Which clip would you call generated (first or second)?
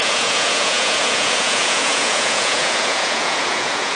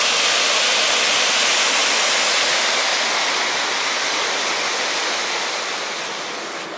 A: first